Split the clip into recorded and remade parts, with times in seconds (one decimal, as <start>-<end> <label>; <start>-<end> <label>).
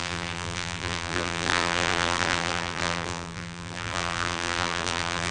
0.0-5.3 remade